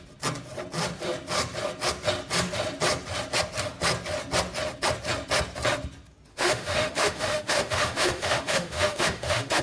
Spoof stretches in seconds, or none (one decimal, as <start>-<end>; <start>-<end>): 6.3-9.6